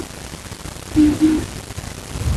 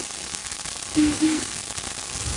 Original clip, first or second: first